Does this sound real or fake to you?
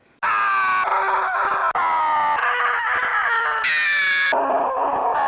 real